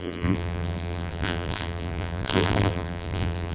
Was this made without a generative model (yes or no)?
no